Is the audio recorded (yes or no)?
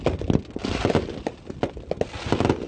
yes